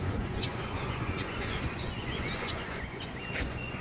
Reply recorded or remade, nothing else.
remade